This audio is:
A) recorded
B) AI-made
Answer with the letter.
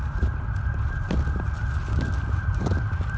A